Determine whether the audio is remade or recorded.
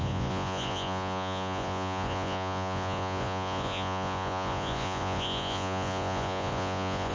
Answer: remade